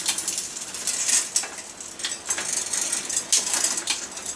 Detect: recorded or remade recorded